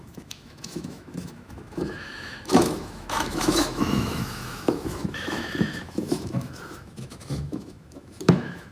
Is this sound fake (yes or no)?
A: yes